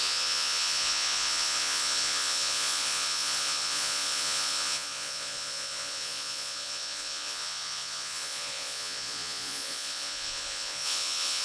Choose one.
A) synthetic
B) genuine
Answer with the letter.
A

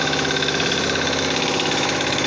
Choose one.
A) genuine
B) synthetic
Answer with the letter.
B